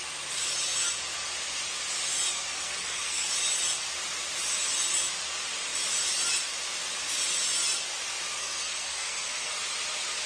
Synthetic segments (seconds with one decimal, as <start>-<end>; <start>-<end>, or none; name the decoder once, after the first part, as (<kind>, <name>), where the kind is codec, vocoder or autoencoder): 2.3-3.3 (codec, SNAC); 8.4-9.5